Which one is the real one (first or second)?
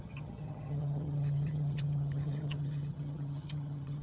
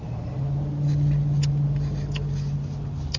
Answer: second